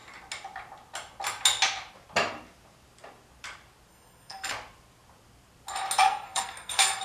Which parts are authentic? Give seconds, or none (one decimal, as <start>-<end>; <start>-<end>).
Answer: 0.0-3.9; 4.5-6.0